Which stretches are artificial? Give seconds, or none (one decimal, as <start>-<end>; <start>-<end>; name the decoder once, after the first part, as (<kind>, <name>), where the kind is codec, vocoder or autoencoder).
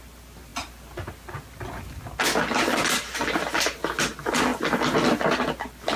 none